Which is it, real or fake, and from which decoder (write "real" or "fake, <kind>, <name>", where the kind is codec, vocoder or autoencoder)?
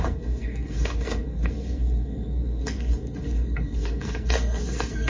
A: fake, codec, SNAC